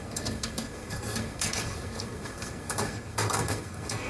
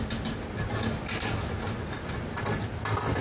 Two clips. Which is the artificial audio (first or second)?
first